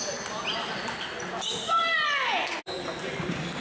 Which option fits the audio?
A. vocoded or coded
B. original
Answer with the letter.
B